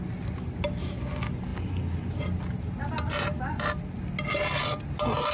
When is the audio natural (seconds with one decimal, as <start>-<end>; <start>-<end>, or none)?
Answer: 0.0-5.3